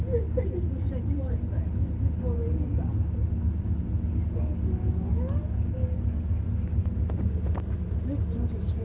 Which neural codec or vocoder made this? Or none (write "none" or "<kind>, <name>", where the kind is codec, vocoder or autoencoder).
none